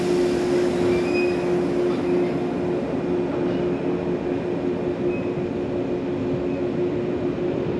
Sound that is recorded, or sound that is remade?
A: recorded